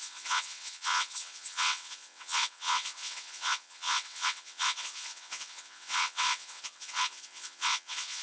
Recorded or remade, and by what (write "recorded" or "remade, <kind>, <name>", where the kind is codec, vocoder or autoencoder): remade, vocoder, WaveNeXt